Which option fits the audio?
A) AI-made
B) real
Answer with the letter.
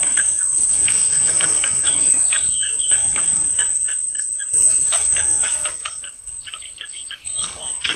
A